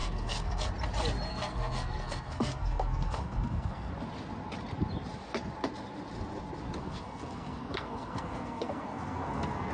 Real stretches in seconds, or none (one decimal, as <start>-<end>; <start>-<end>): 0.7-1.3; 3.9-6.8

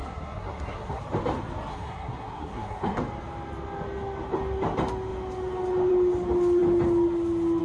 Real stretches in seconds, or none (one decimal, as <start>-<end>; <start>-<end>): 1.0-1.7; 3.0-7.6

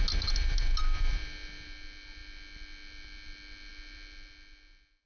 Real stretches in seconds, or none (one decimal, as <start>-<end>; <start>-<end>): 0.0-5.1

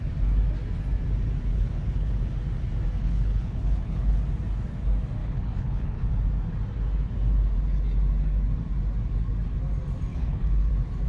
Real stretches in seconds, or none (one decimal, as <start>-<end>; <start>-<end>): 0.0-1.5; 2.1-3.0; 4.2-5.2; 6.1-10.1; 10.7-11.1

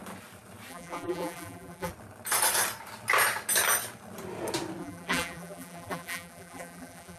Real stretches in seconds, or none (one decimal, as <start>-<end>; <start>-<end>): 0.0-0.7; 1.9-4.8